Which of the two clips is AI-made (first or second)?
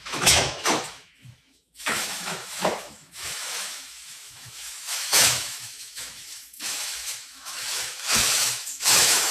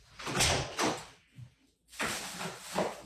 first